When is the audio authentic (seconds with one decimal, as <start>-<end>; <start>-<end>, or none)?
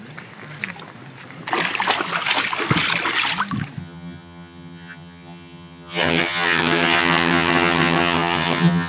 0.0-3.8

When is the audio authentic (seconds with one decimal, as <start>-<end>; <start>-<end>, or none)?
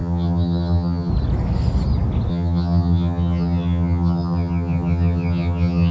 1.1-2.3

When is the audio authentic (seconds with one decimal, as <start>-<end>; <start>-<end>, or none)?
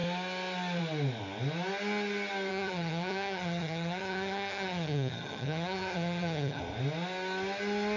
0.0-2.5; 6.6-8.0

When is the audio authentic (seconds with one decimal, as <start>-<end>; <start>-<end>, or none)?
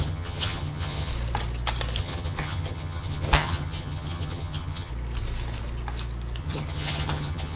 1.1-2.0; 4.9-6.4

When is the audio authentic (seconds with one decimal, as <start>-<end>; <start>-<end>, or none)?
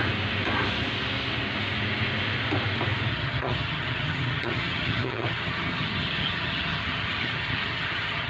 0.0-3.1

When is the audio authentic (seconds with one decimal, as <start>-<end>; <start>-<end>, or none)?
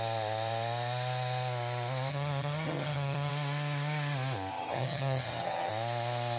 0.0-2.1; 3.3-4.5; 5.7-6.4